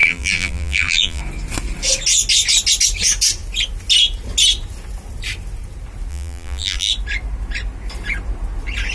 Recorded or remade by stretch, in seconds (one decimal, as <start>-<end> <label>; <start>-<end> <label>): 0.0-1.2 remade; 1.2-6.1 recorded; 6.1-6.9 remade; 6.9-8.9 recorded